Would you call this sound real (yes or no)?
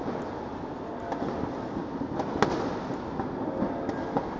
yes